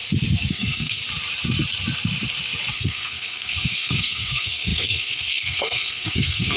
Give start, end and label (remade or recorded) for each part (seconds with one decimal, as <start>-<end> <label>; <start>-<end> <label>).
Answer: 0.0-0.5 recorded; 0.5-1.0 remade; 1.0-2.7 recorded; 2.7-6.6 remade